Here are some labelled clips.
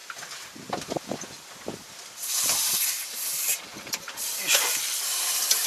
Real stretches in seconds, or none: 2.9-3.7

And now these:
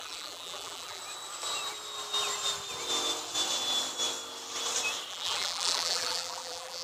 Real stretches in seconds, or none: 1.0-5.1

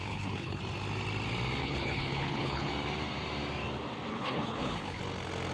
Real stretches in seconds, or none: 0.6-1.6; 2.7-4.1; 5.0-5.5